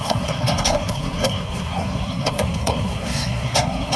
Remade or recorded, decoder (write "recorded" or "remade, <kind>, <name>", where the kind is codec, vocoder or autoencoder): remade, codec, SNAC